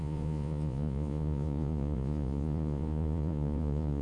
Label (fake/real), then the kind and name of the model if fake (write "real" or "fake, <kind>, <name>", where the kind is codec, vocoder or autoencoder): fake, vocoder, Vocos